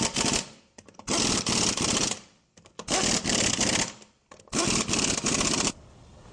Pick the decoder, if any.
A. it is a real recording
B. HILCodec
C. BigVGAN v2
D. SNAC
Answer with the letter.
C